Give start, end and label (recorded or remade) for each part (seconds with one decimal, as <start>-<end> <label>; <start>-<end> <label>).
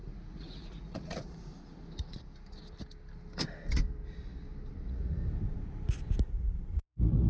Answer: 0.0-1.5 remade; 1.5-4.7 recorded; 4.7-5.2 remade; 5.2-6.3 recorded; 6.3-7.3 remade